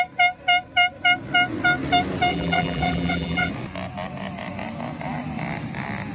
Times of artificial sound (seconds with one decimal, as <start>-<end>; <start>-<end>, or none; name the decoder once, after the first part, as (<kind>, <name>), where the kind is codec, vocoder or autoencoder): 2.3-3.5 (vocoder, BigVGAN v2)